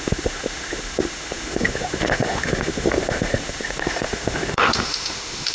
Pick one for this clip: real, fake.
fake